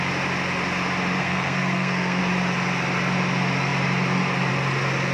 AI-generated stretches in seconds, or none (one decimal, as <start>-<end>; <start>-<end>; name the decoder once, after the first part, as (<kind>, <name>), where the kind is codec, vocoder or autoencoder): 1.2-2.2 (codec, SNAC)